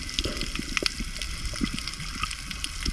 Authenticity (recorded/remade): recorded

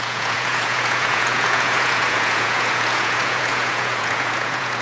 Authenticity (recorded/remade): remade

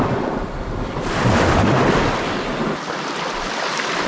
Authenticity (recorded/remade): recorded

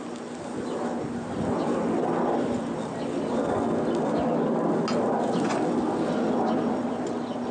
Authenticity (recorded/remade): recorded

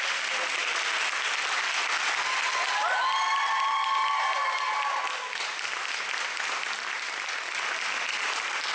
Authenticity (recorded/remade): recorded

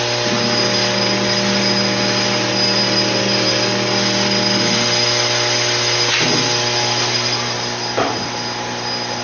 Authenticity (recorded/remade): recorded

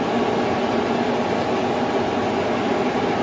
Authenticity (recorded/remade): recorded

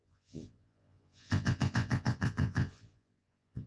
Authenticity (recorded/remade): remade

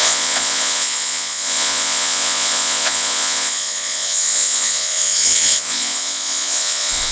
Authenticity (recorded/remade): remade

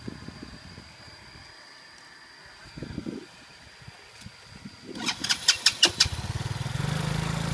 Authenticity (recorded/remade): recorded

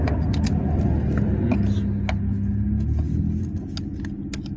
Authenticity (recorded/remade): recorded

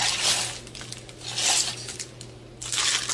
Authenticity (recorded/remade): recorded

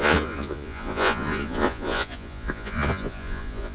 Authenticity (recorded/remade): remade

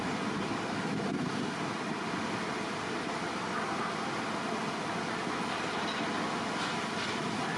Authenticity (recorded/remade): recorded